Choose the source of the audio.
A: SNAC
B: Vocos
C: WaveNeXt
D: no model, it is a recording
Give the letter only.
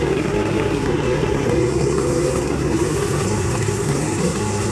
A